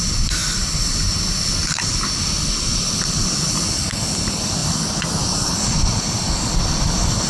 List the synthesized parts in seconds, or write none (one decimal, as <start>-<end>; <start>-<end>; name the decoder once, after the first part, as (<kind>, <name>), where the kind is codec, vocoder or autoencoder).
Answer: none